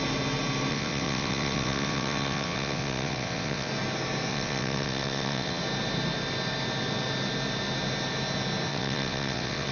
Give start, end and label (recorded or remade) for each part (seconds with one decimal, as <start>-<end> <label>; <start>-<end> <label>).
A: 0.0-0.7 recorded; 0.7-3.7 remade; 3.7-4.3 recorded; 4.3-5.6 remade; 5.6-8.7 recorded; 8.7-9.7 remade